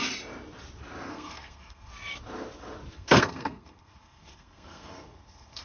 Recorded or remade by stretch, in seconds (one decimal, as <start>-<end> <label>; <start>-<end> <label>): 0.0-1.1 recorded; 1.1-1.9 remade; 1.9-2.9 recorded; 2.9-5.6 remade

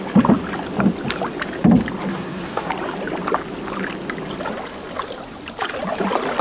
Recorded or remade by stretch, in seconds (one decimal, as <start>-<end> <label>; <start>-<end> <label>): 0.0-2.1 recorded; 2.1-2.7 remade; 2.7-6.4 recorded